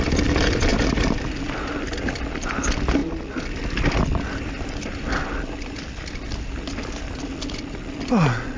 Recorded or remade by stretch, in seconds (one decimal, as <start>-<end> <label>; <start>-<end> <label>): 0.0-8.6 recorded